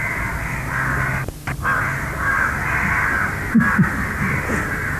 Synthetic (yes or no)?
no